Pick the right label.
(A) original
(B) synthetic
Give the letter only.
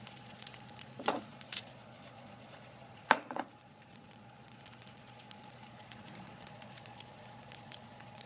B